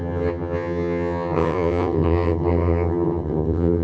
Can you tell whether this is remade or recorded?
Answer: remade